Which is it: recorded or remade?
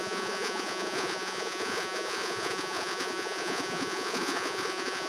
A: remade